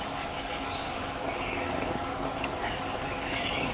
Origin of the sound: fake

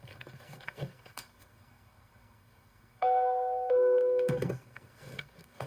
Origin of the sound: fake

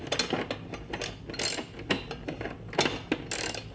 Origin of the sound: real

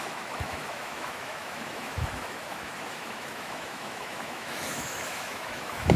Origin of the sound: fake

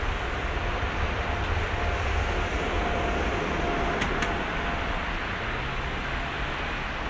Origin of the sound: real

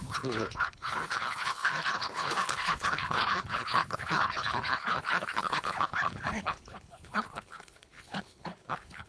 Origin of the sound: fake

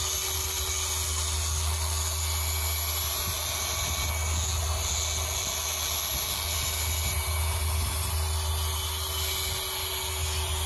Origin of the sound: real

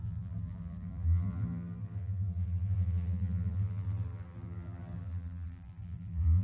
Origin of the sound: fake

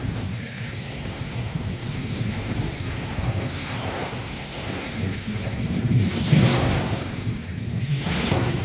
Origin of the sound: fake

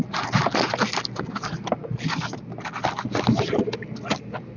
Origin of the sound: real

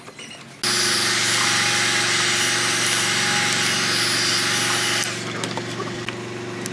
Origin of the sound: real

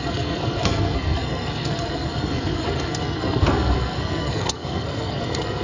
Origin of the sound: fake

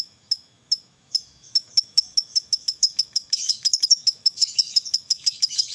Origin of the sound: fake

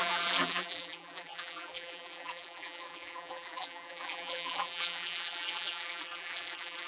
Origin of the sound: fake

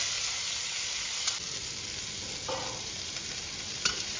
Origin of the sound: real